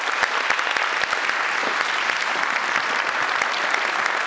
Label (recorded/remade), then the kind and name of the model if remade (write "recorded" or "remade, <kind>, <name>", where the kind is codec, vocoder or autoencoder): recorded